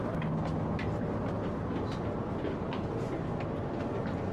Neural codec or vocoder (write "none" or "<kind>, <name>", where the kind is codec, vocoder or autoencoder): none